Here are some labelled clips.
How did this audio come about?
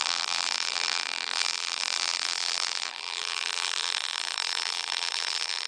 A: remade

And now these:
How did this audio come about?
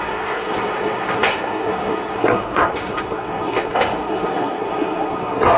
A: remade